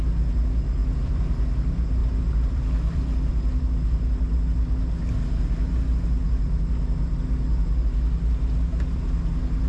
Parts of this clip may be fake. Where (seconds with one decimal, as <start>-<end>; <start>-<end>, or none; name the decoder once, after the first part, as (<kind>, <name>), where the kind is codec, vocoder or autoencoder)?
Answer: 0.8-1.3 (vocoder, BigVGAN v2); 2.0-3.3